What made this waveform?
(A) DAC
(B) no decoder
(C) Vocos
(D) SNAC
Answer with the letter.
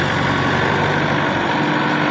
B